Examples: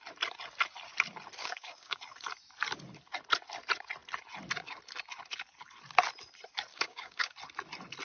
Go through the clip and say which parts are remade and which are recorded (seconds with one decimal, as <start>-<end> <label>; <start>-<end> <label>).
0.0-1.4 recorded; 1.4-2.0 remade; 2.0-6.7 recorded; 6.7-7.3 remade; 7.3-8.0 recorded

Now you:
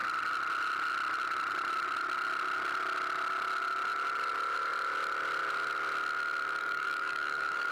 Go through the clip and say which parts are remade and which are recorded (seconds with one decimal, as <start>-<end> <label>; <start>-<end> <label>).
0.0-6.6 recorded; 6.6-7.7 remade

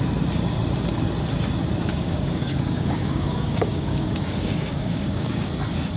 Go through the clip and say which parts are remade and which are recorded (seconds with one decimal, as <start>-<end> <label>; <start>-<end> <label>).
0.0-1.9 recorded; 1.9-5.5 remade; 5.5-6.0 recorded

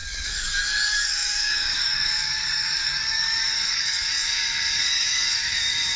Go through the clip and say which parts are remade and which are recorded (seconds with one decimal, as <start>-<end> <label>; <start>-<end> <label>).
0.0-6.0 remade

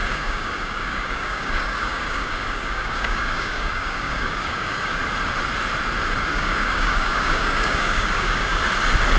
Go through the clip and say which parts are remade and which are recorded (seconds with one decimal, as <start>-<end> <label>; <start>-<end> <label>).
0.0-5.0 remade; 5.0-6.3 recorded; 6.3-8.6 remade; 8.6-9.2 recorded